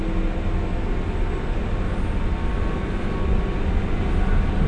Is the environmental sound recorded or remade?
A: recorded